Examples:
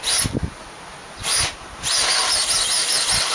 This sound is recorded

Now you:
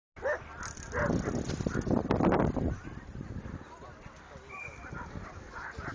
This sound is recorded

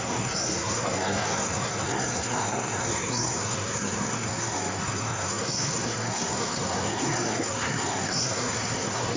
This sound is remade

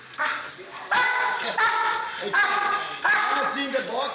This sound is recorded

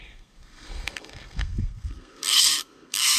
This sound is remade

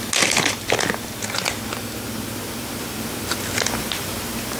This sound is recorded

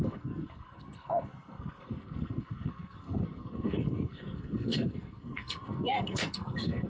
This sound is remade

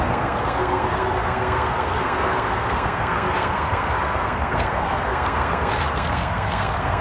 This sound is remade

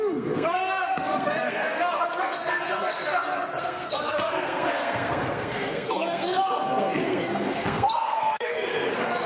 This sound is remade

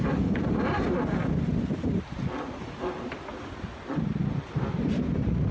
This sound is recorded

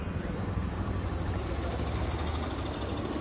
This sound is recorded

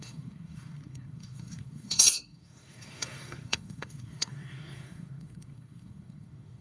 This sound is remade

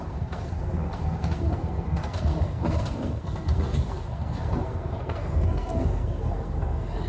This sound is remade